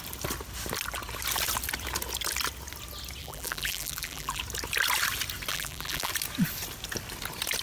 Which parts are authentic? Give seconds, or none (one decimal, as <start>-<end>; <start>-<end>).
0.0-3.2; 4.4-5.5; 6.1-7.6